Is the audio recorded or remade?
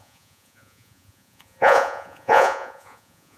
remade